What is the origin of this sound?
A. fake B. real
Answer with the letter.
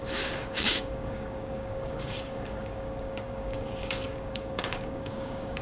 A